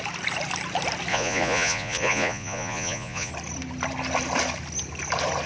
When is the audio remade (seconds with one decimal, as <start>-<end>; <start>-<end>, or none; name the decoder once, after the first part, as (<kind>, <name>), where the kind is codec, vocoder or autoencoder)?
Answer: 1.1-3.3 (vocoder, Vocos)